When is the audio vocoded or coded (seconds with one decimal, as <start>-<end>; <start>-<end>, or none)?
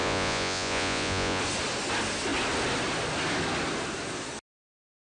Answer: 0.0-1.4